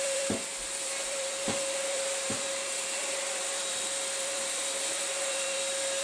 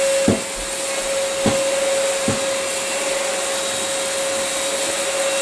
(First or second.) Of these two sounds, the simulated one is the first